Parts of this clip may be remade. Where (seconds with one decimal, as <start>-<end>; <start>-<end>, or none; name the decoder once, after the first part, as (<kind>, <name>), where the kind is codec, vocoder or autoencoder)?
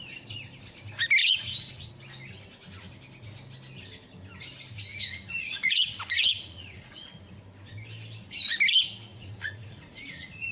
1.2-1.9 (vocoder, Vocos); 4.9-7.2; 9.1-10.5